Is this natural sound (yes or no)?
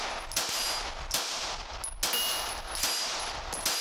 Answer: yes